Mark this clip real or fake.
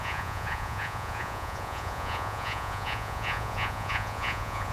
fake